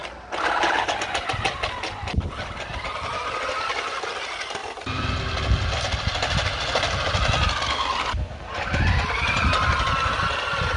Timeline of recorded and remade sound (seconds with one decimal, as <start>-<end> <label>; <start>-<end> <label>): 0.0-10.8 recorded